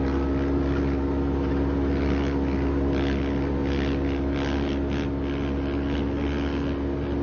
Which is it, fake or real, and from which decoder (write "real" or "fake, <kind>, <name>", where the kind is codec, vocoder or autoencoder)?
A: real